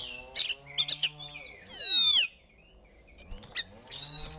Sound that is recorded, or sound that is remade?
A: recorded